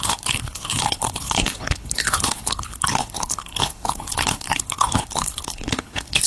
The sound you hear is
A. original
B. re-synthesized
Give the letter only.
B